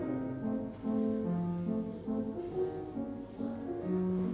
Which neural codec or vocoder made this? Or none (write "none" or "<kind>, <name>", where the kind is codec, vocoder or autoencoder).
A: none